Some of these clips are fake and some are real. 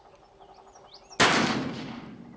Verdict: real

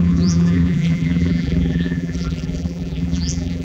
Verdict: fake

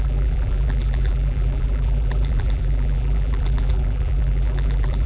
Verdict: fake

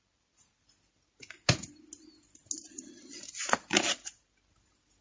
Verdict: real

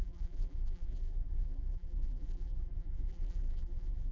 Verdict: fake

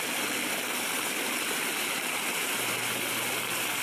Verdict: real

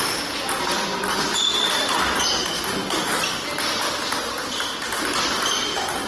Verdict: real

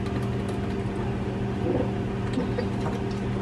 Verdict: real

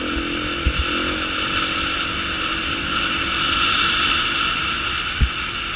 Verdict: real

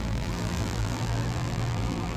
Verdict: fake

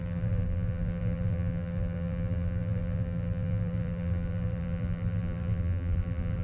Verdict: fake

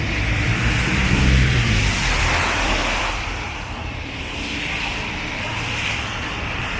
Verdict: fake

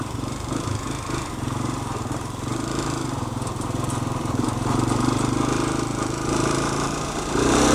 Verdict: fake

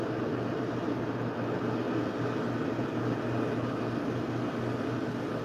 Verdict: real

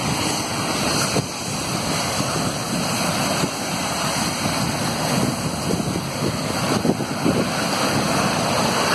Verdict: real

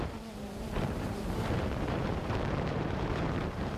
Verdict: fake